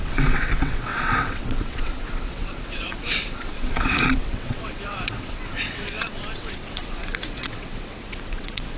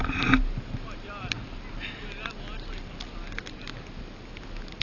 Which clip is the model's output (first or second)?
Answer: first